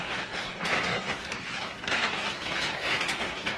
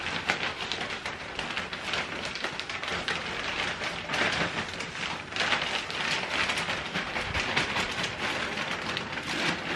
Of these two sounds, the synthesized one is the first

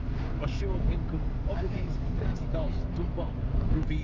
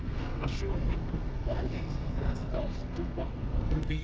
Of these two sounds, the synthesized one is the second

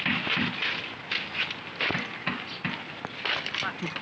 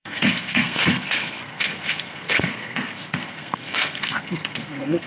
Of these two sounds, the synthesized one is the second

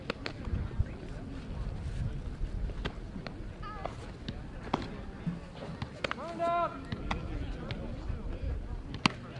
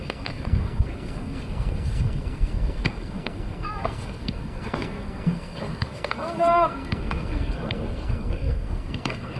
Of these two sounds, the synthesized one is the second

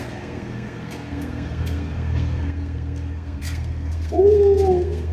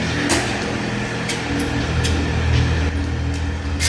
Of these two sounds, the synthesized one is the first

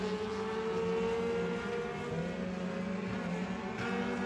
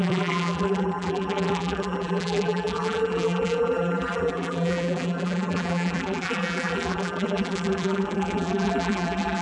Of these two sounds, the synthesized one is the second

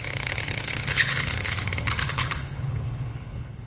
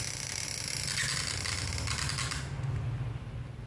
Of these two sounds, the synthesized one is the first